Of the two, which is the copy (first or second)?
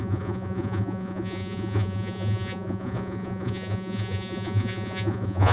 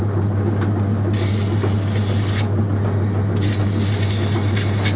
first